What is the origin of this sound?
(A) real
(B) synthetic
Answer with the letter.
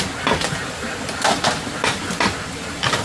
A